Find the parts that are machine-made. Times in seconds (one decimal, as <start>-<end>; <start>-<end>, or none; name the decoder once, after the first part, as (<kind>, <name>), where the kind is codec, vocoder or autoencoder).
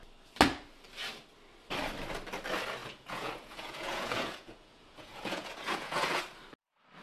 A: 2.8-6.2 (vocoder, Vocos)